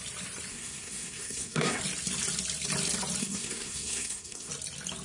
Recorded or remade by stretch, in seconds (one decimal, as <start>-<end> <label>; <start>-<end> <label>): 0.0-0.5 recorded; 0.5-1.8 remade; 1.8-3.2 recorded; 3.2-4.5 remade; 4.5-5.0 recorded